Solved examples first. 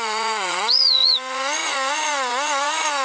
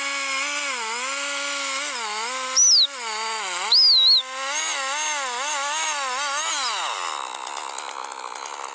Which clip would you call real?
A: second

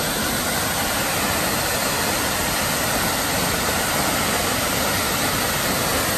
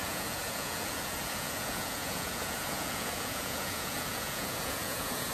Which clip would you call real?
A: first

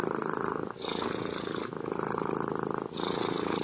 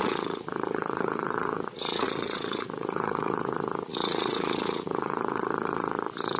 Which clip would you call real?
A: first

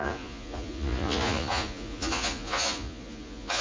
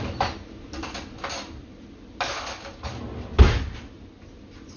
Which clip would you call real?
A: second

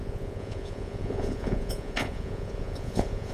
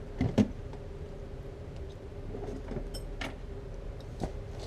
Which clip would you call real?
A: second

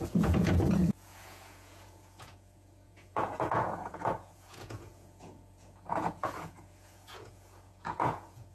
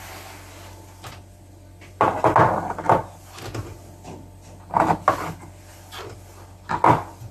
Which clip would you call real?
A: second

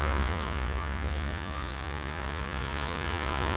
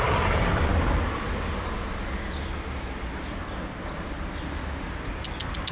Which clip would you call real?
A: second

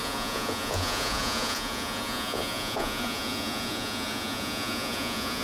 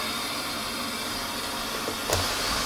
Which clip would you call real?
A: second